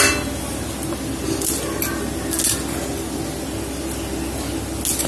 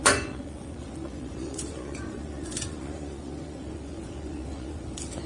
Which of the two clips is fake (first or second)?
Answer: second